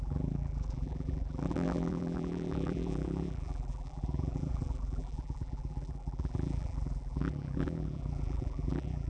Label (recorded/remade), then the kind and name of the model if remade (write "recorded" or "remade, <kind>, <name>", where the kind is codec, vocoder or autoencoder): remade, vocoder, BigVGAN v2